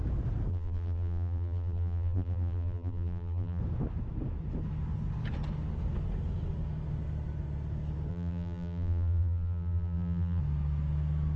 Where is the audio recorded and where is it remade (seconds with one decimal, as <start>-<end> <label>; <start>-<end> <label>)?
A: 0.0-0.5 recorded; 0.5-3.6 remade; 3.6-8.1 recorded; 8.1-10.4 remade; 10.4-11.4 recorded